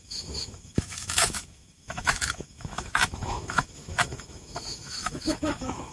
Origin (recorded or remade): remade